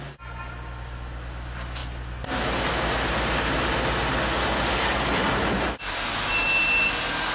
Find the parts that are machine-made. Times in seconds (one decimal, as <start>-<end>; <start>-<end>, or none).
none